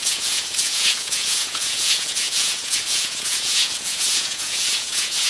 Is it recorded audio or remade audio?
remade